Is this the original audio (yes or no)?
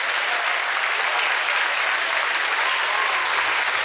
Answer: yes